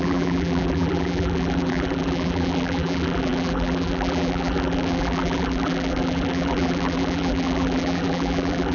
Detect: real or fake fake